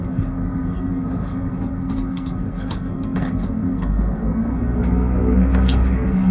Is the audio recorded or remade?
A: remade